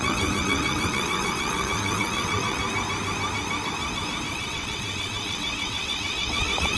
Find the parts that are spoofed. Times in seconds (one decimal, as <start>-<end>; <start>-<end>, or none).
0.0-2.6; 4.3-6.8